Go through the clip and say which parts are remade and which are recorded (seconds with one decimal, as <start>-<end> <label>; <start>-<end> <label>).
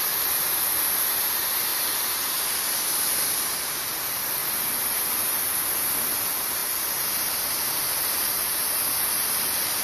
0.0-4.4 remade; 4.4-6.0 recorded; 6.0-9.8 remade